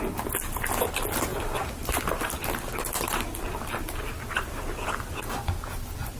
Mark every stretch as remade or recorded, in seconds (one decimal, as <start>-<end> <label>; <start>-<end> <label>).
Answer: 0.0-1.3 recorded; 1.3-2.0 remade; 2.0-6.2 recorded